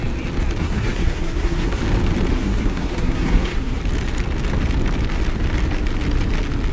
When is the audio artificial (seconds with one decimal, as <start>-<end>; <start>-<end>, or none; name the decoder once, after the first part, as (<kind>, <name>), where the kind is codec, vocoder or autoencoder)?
0.6-1.8 (codec, SNAC); 2.3-3.8